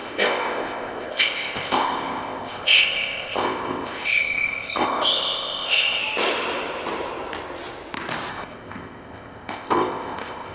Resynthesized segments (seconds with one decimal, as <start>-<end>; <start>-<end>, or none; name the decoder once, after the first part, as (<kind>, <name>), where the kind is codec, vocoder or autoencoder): 0.0-6.0 (codec, ZipCodec); 8.3-10.5